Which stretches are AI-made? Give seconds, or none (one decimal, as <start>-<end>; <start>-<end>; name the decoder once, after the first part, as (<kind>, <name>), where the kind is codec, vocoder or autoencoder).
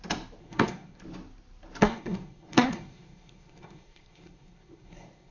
0.4-1.0 (codec, SNAC); 1.8-5.3